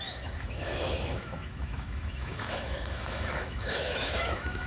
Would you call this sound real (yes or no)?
no